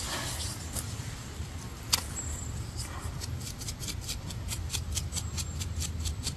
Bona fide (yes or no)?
yes